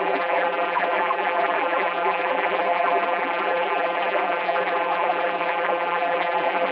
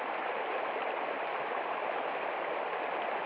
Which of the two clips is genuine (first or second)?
second